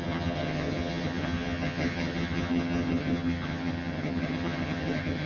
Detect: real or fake fake